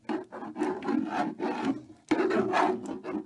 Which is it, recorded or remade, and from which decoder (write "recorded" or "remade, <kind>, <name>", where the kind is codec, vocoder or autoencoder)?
recorded